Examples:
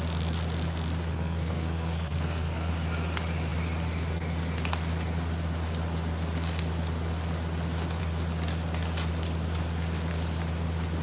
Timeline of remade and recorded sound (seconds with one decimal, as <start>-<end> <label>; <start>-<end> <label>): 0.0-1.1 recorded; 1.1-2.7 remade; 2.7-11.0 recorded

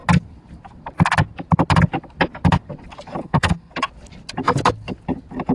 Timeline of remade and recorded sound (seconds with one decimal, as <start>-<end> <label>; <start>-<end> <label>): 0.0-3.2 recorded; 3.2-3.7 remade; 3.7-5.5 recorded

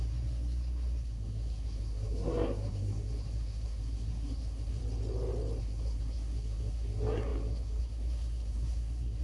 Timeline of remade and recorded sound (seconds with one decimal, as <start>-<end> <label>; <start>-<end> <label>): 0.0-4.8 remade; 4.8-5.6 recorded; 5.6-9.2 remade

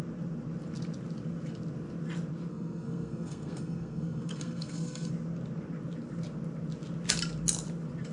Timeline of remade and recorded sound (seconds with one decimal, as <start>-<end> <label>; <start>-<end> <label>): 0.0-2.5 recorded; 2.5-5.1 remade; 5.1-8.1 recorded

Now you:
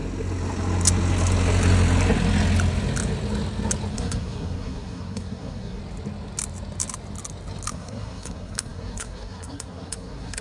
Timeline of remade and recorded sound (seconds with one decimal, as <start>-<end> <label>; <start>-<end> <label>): 0.0-3.9 recorded; 3.9-5.8 remade; 5.8-7.7 recorded; 7.7-10.4 remade

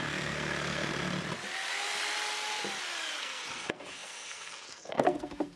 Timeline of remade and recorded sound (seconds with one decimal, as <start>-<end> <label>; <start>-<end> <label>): 0.0-0.9 remade; 0.9-3.2 recorded; 3.2-5.6 remade

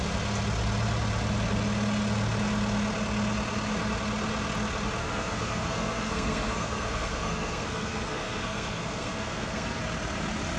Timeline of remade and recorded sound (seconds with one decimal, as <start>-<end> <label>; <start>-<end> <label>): 0.0-5.0 recorded; 5.0-9.8 remade; 9.8-10.6 recorded